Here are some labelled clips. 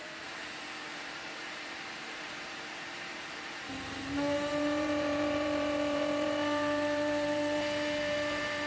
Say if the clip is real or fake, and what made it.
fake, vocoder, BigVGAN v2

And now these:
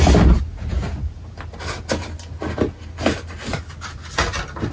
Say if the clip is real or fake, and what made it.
real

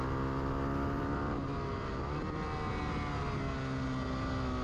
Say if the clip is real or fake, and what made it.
real